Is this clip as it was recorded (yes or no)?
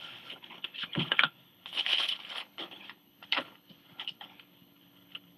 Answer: no